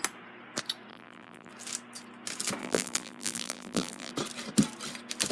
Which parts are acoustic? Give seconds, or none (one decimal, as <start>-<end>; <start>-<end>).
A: 0.0-0.9; 1.5-2.6; 4.1-5.3